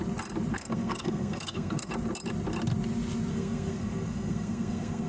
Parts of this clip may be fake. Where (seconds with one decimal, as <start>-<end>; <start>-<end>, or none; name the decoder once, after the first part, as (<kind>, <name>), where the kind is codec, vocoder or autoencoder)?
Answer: 0.5-1.9 (codec, SNAC); 3.3-5.1